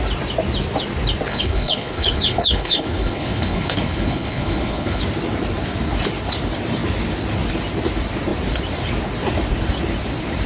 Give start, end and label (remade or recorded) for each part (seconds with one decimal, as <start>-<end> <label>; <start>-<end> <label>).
0.0-1.3 recorded; 1.3-5.0 remade; 5.0-10.5 recorded